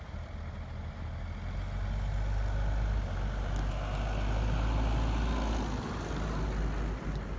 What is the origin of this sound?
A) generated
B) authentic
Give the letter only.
B